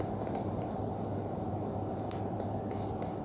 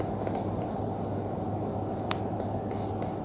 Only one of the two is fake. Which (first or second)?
first